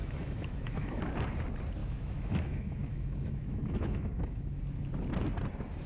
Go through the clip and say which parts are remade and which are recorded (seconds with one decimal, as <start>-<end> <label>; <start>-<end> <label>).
0.0-1.0 remade; 1.0-1.8 recorded; 1.8-4.6 remade; 4.6-5.9 recorded

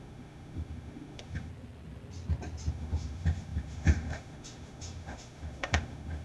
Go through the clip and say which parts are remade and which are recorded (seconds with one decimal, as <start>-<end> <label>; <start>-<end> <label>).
0.0-1.5 remade; 1.5-2.7 recorded; 2.7-6.2 remade

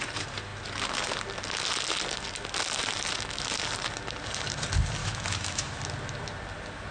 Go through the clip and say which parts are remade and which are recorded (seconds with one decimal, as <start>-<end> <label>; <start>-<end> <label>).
0.0-5.0 recorded; 5.0-5.8 remade; 5.8-6.9 recorded

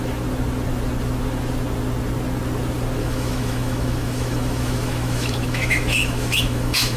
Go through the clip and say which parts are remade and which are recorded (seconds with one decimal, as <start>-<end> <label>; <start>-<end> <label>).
0.0-3.0 recorded; 3.0-7.0 remade

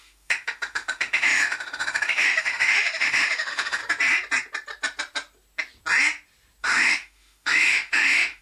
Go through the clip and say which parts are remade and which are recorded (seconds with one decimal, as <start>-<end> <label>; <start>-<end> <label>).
0.0-3.8 remade; 3.8-6.6 recorded; 6.6-8.4 remade